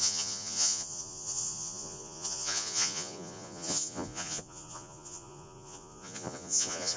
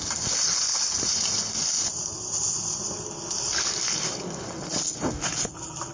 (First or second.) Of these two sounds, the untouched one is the second